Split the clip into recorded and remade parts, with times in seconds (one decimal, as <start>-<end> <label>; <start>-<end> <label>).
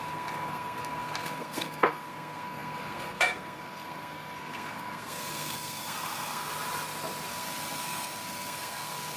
0.0-6.5 remade; 6.5-7.3 recorded; 7.3-9.2 remade